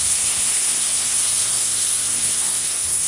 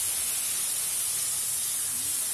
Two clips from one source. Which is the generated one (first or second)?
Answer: first